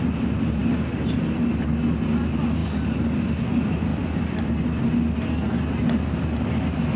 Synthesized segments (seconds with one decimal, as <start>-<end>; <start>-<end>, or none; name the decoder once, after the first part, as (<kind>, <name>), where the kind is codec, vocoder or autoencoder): none